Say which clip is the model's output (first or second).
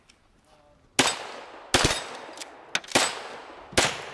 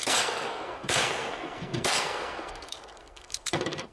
second